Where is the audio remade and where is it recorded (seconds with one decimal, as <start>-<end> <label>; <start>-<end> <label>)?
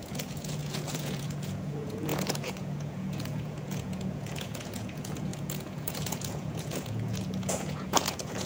0.0-8.5 remade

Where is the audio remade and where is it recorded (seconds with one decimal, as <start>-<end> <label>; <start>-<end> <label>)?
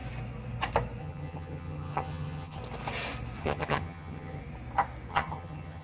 0.0-1.0 recorded; 1.0-2.6 remade; 2.6-3.4 recorded; 3.4-4.4 remade; 4.4-5.1 recorded; 5.1-5.8 remade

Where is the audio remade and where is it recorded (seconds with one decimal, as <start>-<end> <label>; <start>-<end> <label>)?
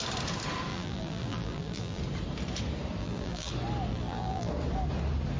0.0-0.7 recorded; 0.7-2.0 remade; 2.0-3.0 recorded; 3.0-3.5 remade; 3.5-3.9 recorded; 3.9-4.5 remade; 4.5-5.4 recorded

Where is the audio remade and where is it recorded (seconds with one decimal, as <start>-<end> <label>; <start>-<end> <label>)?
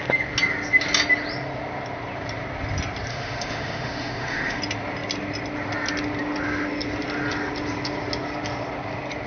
0.0-3.1 recorded; 3.1-4.6 remade; 4.6-9.3 recorded